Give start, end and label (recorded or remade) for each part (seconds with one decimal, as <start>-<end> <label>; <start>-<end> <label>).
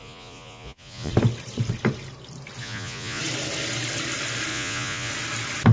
0.0-1.1 remade; 1.1-2.6 recorded; 2.6-3.2 remade; 3.2-4.5 recorded; 4.5-5.1 remade; 5.1-5.7 recorded